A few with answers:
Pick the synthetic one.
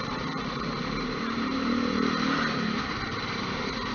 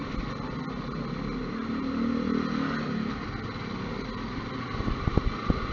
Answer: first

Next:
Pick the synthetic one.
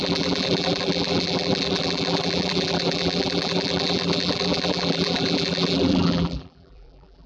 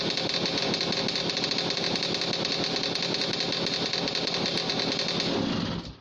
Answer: first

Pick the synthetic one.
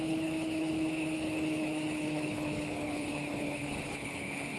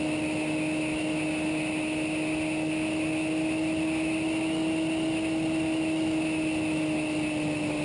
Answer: first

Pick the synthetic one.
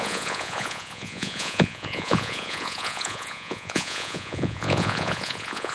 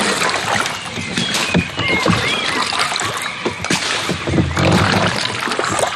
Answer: first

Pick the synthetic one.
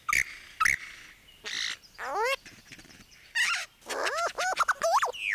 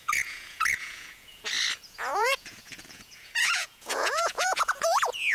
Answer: second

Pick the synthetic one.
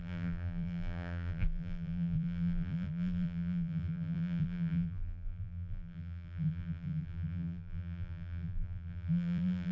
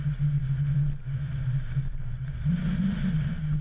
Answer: first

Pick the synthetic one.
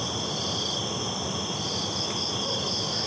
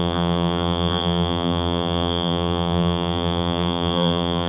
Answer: second